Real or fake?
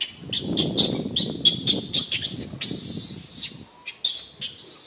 real